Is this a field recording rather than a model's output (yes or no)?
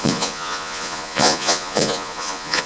no